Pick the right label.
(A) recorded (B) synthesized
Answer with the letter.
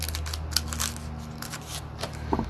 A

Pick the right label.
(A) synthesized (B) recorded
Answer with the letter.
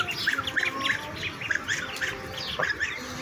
B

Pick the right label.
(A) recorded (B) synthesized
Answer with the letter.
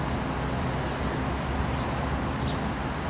A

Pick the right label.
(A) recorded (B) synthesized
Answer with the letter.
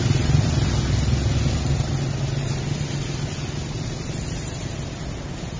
A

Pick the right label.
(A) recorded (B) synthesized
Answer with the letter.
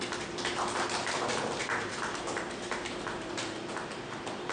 A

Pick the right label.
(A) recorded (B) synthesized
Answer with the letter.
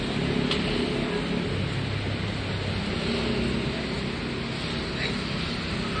A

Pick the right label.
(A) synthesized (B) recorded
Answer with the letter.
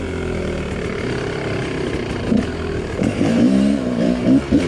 A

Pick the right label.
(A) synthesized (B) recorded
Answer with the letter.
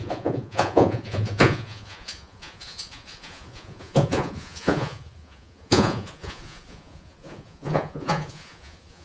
A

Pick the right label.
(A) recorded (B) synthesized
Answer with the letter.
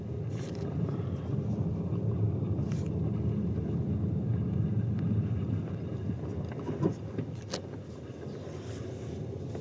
A